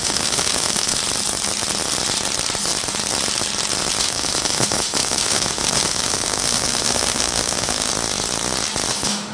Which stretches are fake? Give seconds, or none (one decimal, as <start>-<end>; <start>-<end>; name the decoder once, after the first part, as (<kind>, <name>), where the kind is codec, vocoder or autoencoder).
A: 0.0-1.0 (autoencoder, DAC-VAE); 4.0-7.9; 8.9-9.3